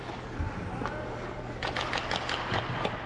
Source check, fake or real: real